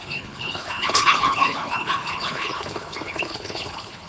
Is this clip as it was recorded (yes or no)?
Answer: no